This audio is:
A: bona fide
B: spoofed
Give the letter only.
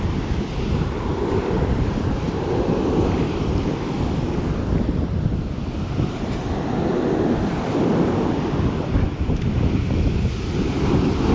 A